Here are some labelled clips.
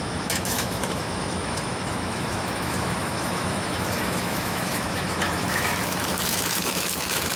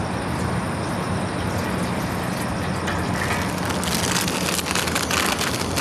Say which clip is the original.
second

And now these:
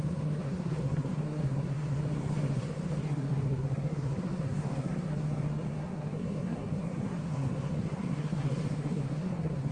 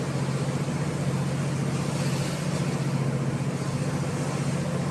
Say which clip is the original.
second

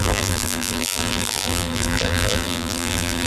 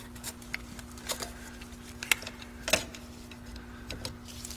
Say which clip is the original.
second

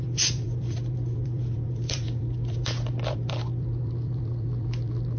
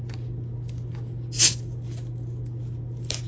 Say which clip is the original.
second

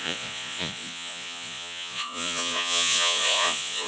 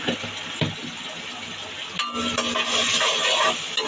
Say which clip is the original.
second